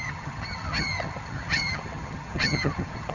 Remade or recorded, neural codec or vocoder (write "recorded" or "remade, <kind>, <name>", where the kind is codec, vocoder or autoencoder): remade, vocoder, HiFi-GAN